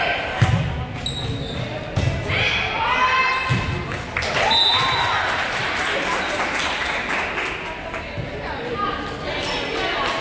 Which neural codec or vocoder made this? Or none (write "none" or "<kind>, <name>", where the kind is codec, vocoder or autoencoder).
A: none